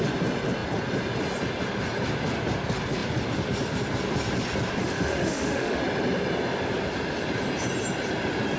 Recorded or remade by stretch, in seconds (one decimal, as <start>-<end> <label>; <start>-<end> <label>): 0.0-4.8 recorded; 4.8-5.8 remade; 5.8-8.6 recorded